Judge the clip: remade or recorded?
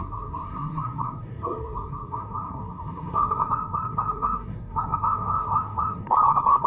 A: remade